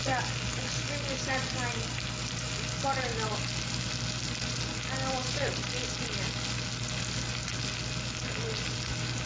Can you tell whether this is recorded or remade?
recorded